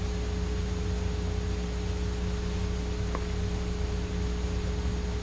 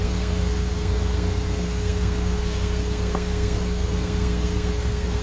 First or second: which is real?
first